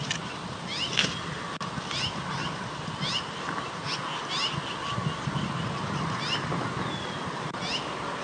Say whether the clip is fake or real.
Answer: real